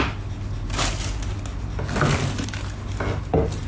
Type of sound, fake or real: real